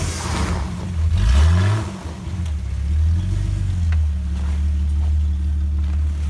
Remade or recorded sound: recorded